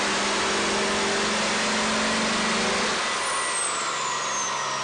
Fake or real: real